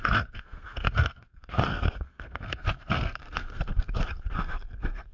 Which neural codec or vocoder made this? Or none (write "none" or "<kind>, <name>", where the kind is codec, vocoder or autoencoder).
codec, SNAC